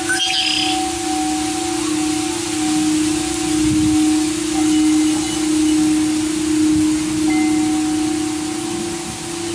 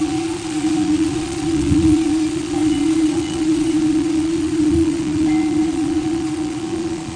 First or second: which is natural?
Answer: first